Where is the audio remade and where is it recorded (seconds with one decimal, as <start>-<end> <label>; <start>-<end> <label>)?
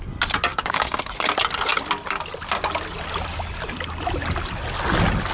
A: 0.0-0.5 recorded; 0.5-1.1 remade; 1.1-5.3 recorded